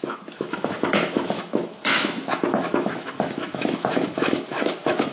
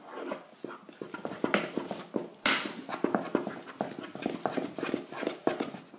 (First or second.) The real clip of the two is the second